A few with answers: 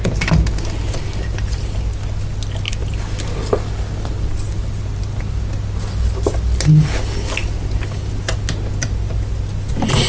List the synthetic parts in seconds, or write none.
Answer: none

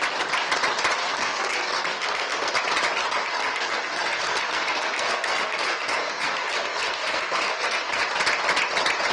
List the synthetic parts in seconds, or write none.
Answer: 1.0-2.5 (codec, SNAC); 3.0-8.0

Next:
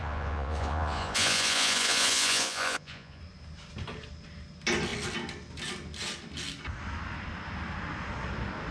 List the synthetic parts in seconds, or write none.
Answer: 0.0-3.2 (vocoder, Vocos)